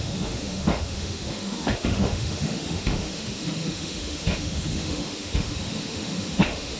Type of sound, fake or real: fake